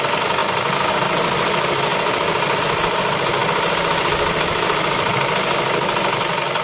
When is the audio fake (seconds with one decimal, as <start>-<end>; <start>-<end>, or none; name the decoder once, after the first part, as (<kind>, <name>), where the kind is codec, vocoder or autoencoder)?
none